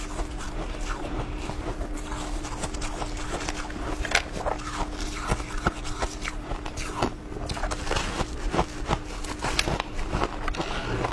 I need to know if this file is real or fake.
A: real